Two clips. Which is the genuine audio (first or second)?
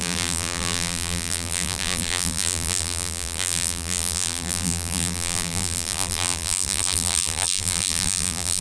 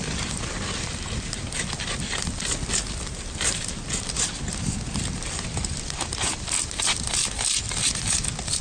second